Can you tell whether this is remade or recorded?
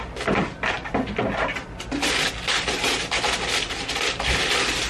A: recorded